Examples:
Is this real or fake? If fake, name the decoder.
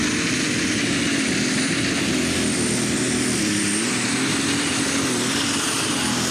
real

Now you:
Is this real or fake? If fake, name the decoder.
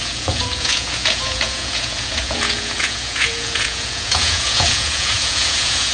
fake, vocoder, Vocos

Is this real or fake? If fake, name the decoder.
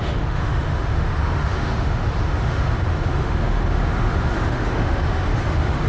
fake, autoencoder, DAC-VAE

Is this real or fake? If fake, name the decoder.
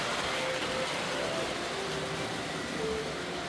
real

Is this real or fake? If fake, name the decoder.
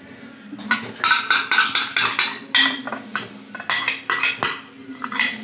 real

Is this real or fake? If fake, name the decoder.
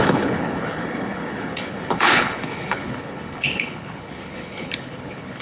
fake, codec, HILCodec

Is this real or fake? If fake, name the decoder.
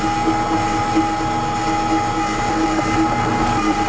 real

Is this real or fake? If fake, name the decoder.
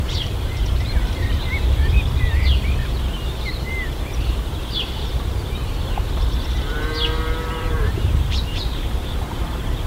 fake, vocoder, BigVGAN v2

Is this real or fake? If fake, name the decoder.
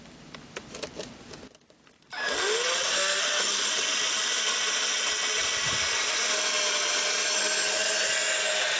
real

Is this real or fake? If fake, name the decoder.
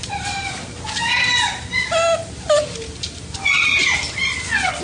real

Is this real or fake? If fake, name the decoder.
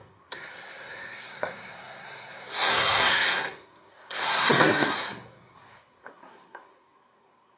fake, codec, SNAC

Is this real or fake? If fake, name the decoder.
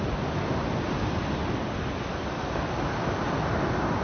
real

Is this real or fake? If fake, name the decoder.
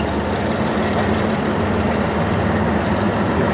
real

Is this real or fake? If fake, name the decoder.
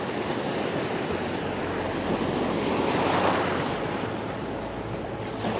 real